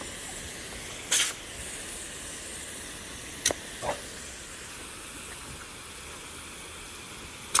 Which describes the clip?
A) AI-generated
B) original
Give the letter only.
B